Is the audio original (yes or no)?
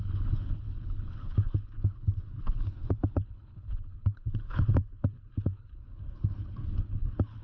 no